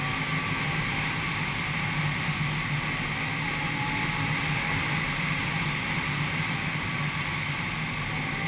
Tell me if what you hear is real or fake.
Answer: real